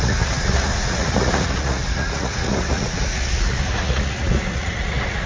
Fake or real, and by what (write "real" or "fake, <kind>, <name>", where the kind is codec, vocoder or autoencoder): fake, vocoder, Vocos